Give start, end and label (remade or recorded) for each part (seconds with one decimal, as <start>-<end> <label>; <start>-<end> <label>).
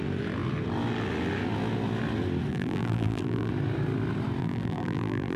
0.0-2.5 recorded; 2.5-3.5 remade; 3.5-4.4 recorded; 4.4-5.4 remade